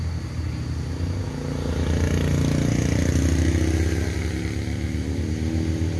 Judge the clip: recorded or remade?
recorded